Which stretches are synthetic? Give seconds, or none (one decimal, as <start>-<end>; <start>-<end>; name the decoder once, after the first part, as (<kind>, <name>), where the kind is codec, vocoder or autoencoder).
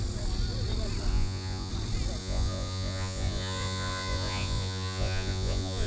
1.1-1.7 (vocoder, Vocos); 2.2-5.9